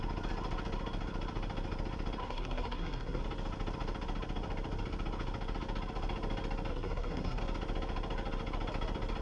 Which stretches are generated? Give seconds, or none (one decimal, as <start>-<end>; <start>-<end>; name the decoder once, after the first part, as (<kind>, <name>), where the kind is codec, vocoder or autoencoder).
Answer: 2.2-3.2 (codec, SNAC); 6.7-7.4